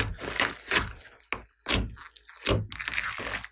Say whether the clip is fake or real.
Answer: real